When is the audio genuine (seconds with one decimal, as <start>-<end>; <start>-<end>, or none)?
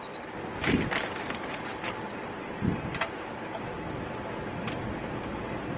0.0-5.8